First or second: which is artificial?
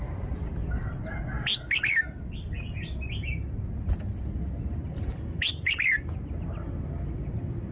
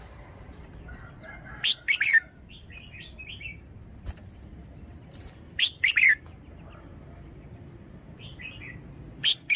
second